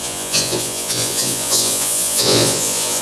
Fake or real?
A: fake